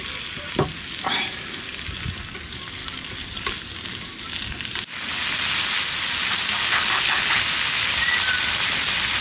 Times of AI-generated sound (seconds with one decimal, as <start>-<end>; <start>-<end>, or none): 6.7-7.4